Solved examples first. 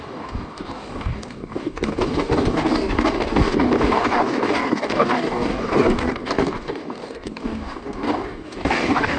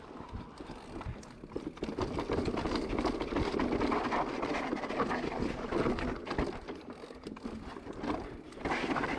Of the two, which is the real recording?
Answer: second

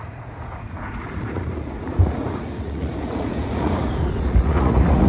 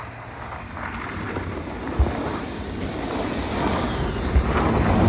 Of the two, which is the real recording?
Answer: second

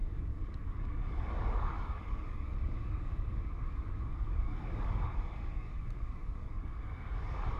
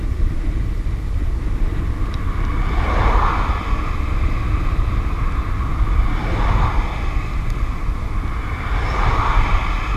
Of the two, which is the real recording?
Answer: second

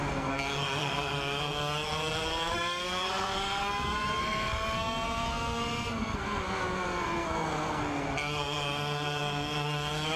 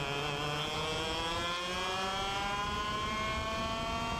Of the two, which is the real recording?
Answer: second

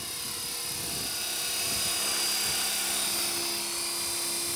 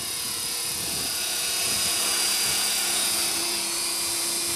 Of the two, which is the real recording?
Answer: first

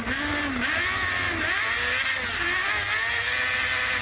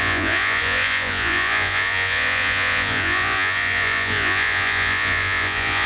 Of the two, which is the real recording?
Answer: first